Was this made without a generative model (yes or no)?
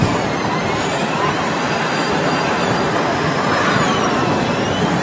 no